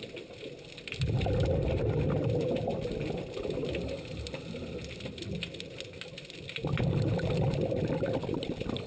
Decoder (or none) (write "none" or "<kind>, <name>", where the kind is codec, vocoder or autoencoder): none